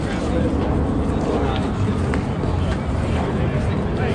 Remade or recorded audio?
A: recorded